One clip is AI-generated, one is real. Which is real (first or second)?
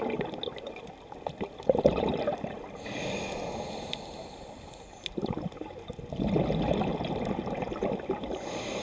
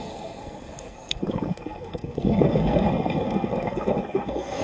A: first